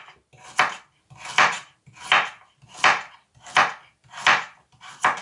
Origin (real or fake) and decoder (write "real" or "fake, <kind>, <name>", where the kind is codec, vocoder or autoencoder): real